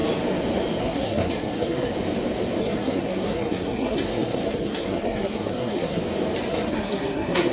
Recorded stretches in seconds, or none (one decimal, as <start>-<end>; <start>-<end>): 0.0-0.8; 1.9-2.6; 6.0-6.5